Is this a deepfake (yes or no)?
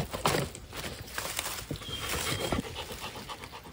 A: no